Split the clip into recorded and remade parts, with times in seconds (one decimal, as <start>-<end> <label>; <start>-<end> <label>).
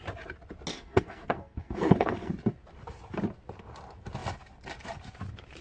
0.0-0.7 recorded; 0.7-2.3 remade; 2.3-5.6 recorded